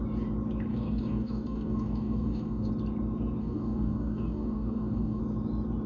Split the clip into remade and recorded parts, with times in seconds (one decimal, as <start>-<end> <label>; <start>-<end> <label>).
0.0-0.7 recorded; 0.7-2.7 remade; 2.7-3.4 recorded; 3.4-5.2 remade; 5.2-5.9 recorded